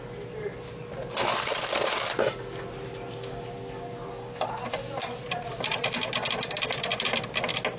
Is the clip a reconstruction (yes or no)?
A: no